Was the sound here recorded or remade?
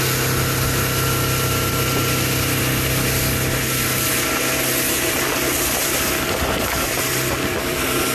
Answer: recorded